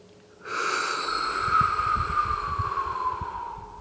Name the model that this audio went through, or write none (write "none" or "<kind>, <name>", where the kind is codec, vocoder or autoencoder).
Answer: none